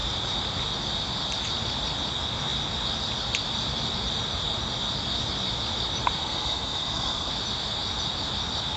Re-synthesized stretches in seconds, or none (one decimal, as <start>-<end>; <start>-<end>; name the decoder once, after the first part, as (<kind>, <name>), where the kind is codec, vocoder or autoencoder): 6.2-7.3 (codec, SNAC)